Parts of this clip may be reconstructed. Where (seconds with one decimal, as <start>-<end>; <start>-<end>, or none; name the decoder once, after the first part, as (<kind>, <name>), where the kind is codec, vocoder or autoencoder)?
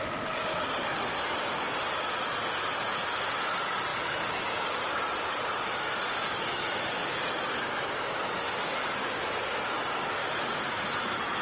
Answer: 3.9-4.9 (vocoder, BigVGAN v2); 10.2-11.0